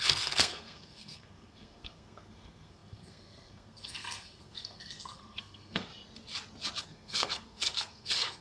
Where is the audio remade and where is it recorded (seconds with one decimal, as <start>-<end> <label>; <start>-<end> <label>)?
0.0-5.9 remade; 5.9-6.8 recorded; 6.8-8.4 remade